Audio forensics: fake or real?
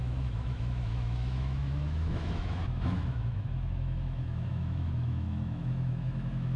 fake